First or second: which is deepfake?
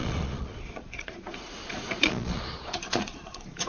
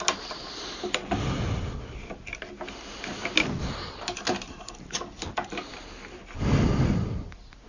first